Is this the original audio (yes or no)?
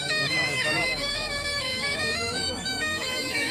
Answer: no